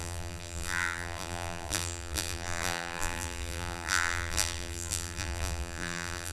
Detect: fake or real fake